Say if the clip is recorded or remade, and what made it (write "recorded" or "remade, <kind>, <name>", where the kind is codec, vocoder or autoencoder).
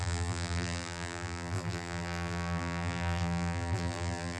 remade, vocoder, BigVGAN v2